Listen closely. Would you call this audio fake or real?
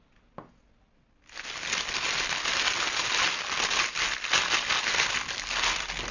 real